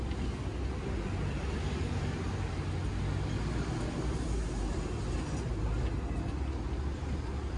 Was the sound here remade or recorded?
recorded